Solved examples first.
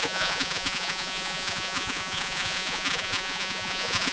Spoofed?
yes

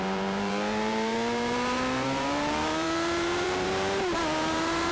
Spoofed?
yes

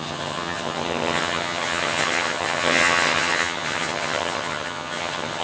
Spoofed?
yes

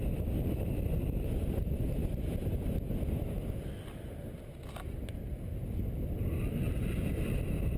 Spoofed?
no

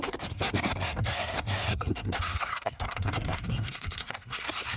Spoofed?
yes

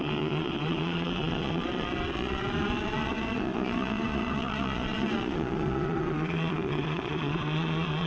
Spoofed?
yes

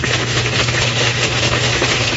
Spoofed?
yes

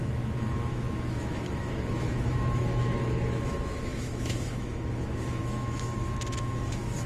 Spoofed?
yes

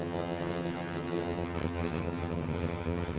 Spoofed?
yes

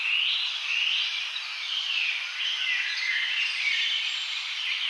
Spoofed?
no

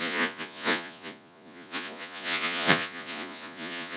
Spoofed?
yes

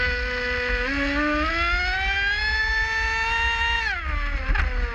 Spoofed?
no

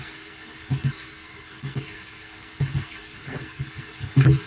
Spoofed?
yes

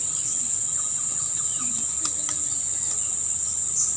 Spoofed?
no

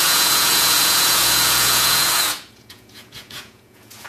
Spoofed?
yes